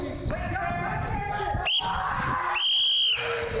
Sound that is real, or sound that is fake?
real